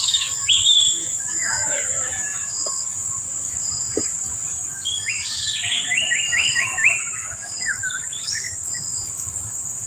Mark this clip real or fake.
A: fake